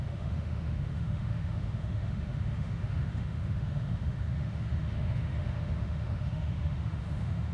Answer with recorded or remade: remade